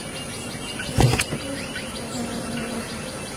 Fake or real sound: real